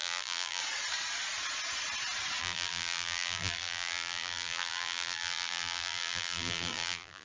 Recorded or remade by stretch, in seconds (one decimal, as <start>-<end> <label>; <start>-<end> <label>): 0.0-0.6 remade; 0.6-2.4 recorded; 2.4-7.2 remade